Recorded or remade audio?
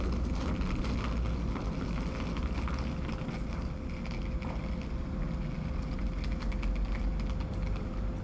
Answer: recorded